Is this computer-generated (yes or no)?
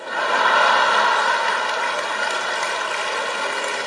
no